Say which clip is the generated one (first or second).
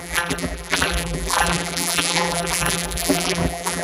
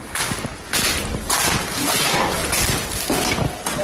first